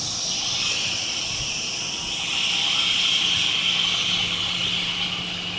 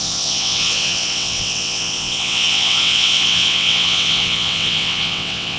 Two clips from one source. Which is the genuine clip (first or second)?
first